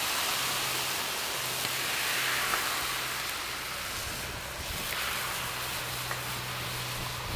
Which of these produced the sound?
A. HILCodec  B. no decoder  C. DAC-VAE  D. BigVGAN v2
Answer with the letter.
B